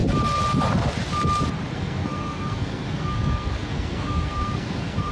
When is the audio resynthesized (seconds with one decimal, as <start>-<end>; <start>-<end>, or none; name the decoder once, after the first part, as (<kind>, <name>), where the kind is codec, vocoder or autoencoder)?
1.7-5.1 (codec, SNAC)